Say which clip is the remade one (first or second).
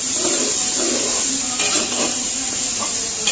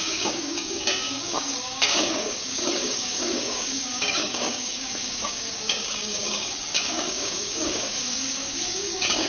second